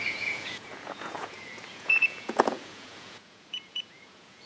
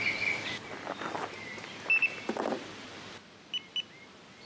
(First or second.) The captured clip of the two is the second